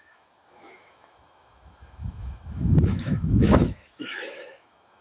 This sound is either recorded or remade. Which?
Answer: remade